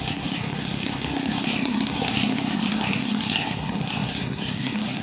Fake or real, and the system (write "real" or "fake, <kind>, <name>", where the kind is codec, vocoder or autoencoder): fake, codec, SNAC